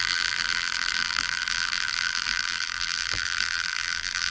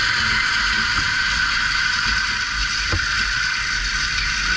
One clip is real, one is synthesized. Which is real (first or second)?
second